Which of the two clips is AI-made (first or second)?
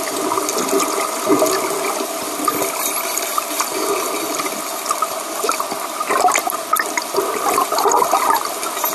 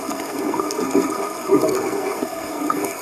second